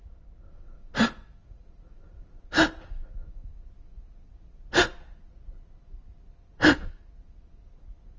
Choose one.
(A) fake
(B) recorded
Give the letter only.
B